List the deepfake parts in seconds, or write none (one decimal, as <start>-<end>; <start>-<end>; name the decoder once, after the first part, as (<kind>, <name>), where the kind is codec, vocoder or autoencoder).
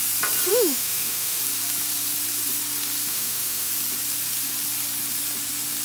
0.5-1.4 (autoencoder, DAC-VAE); 3.1-3.7